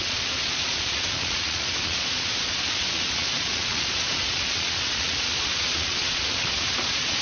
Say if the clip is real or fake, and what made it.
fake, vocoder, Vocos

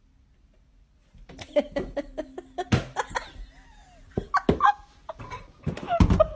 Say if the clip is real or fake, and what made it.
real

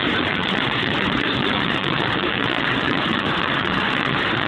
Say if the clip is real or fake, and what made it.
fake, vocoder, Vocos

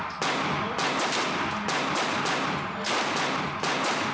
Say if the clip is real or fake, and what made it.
real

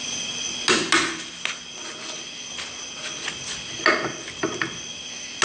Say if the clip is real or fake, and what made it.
real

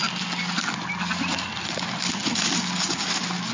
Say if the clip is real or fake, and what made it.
real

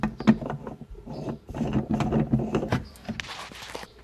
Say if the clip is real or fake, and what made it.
real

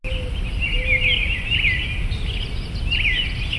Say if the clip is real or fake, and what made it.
real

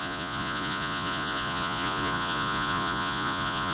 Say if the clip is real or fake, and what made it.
fake, vocoder, Vocos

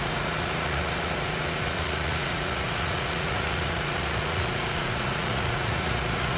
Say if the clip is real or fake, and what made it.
fake, vocoder, Vocos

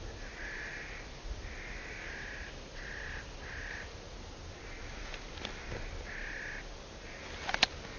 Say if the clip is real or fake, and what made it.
real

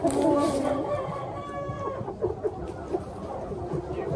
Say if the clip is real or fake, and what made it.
real